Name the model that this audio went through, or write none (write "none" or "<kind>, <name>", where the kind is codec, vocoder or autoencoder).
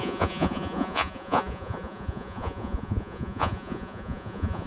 vocoder, Vocos